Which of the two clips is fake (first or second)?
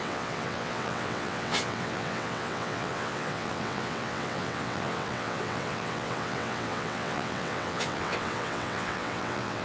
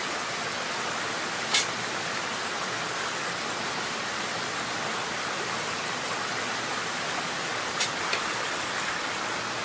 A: first